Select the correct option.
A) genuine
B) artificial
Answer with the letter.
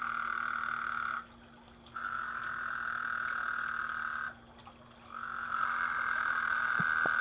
A